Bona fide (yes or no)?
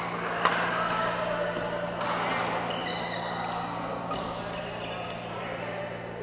yes